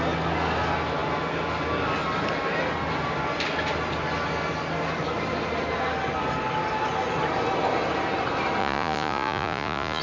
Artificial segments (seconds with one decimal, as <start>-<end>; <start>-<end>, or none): 8.6-10.0